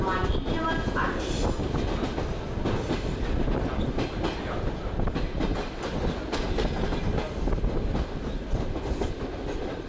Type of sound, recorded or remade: recorded